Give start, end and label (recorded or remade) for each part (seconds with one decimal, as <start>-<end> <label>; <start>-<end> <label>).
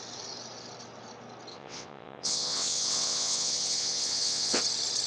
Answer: 0.0-1.5 recorded; 1.5-4.6 remade; 4.6-5.1 recorded